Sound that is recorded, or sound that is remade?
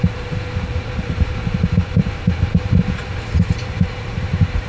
remade